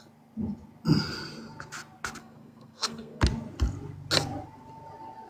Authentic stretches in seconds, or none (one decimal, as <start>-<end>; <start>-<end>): 0.0-2.2; 3.2-5.3